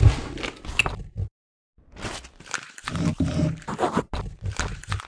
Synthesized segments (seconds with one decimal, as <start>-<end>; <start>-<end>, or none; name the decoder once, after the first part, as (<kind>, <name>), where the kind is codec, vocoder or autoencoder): none